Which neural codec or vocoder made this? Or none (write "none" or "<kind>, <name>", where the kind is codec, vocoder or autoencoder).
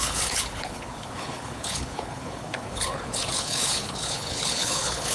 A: codec, HILCodec